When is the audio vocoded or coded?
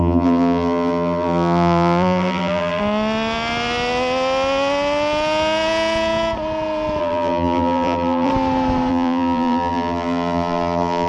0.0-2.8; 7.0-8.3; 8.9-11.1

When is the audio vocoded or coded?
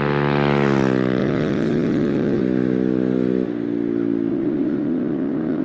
1.2-2.4; 4.3-5.6